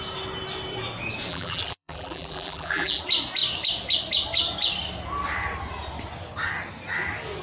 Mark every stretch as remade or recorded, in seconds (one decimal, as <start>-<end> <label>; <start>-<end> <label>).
0.0-1.3 recorded; 1.3-3.0 remade; 3.0-7.4 recorded